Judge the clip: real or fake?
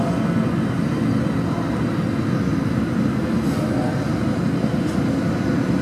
real